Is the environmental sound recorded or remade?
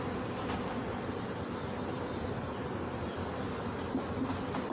recorded